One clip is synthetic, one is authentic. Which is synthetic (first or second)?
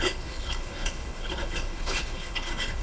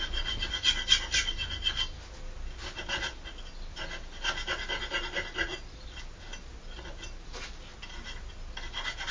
first